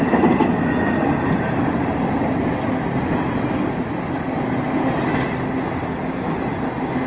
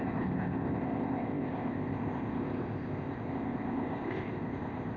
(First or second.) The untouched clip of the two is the first